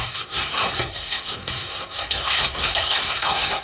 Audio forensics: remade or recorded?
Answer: remade